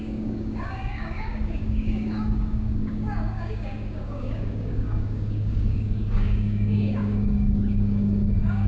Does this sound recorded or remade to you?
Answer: remade